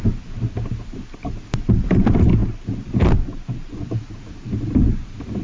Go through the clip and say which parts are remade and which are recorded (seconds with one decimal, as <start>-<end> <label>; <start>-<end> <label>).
0.0-5.4 recorded